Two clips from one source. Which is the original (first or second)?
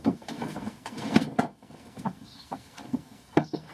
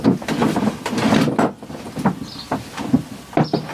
second